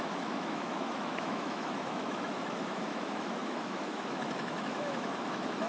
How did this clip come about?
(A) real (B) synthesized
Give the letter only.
B